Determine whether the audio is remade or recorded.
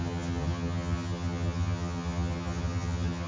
remade